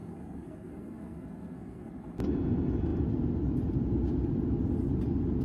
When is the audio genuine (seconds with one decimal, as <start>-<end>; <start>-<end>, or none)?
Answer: 1.9-5.4